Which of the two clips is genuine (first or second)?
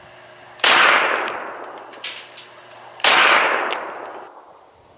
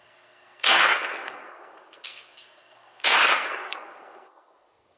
first